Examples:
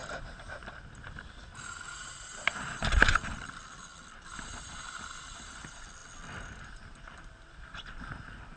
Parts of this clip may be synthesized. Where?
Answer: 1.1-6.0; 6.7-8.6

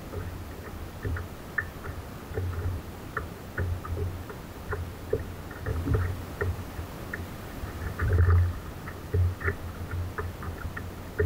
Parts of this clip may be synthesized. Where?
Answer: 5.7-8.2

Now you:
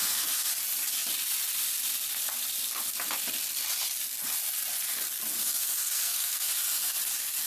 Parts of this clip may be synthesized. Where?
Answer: 0.0-0.5; 5.4-6.5